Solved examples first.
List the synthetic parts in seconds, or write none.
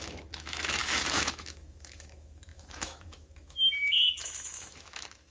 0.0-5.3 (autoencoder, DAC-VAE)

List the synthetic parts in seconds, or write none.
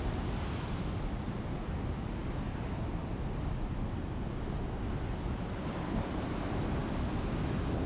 none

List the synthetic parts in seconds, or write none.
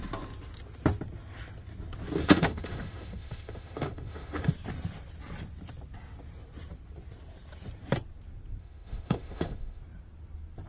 2.2-4.5 (autoencoder, DAC-VAE); 8.6-9.8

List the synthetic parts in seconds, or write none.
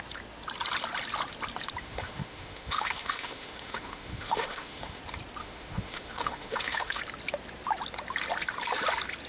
1.8-5.0 (autoencoder, DAC-VAE); 5.4-7.0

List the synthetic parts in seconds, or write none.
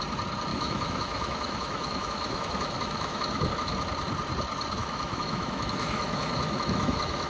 0.5-3.5 (autoencoder, DAC-VAE); 4.8-7.3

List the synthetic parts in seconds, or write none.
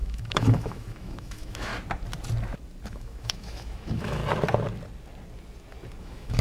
0.0-1.7 (autoencoder, DAC-VAE); 2.9-4.2; 6.0-6.4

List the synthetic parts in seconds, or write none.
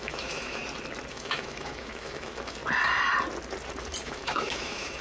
0.0-0.6 (autoencoder, DAC-VAE); 1.1-2.6; 4.0-5.0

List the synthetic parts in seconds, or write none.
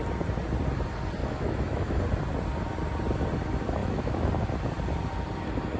1.2-2.0 (autoencoder, DAC-VAE); 3.8-4.3